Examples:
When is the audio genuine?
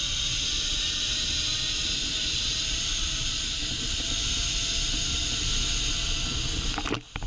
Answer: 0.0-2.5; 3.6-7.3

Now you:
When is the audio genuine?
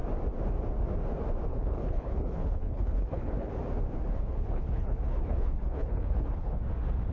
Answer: 0.0-1.5; 3.5-4.1; 6.6-7.1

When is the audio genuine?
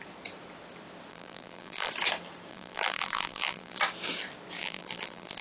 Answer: 0.0-1.1; 1.9-2.5; 3.8-4.6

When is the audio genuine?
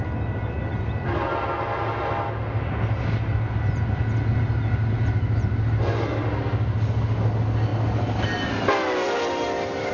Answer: 0.0-9.9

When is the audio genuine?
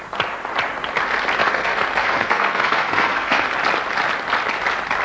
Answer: 0.0-1.4; 3.5-5.0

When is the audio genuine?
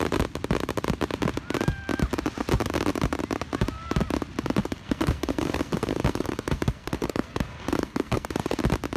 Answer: 0.0-4.6; 8.6-9.0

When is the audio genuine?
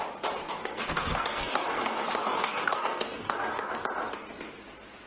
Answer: 0.0-0.6; 3.7-5.1